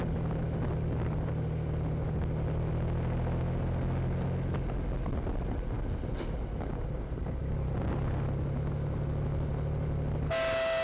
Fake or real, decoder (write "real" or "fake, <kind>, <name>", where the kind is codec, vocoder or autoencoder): real